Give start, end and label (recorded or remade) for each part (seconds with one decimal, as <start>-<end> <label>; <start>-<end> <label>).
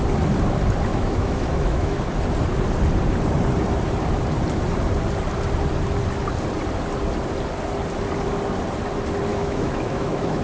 0.0-0.9 recorded; 0.9-2.0 remade; 2.0-9.3 recorded; 9.3-10.4 remade